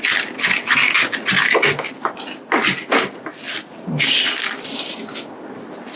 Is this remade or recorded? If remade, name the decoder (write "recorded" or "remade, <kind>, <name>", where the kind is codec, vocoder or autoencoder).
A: recorded